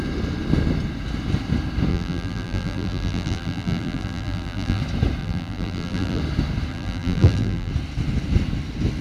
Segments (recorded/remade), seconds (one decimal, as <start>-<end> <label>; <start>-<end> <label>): 0.0-1.9 recorded; 1.9-4.8 remade; 4.8-5.2 recorded; 5.2-6.2 remade; 6.2-6.7 recorded; 6.7-7.7 remade; 7.7-9.0 recorded

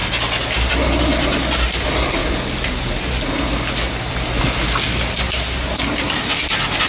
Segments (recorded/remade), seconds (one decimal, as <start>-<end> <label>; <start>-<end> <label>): 0.0-6.9 recorded